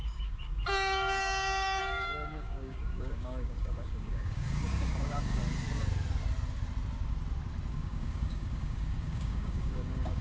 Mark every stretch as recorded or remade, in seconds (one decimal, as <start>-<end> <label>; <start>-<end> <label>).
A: 0.0-5.4 remade; 5.4-7.7 recorded; 7.7-10.2 remade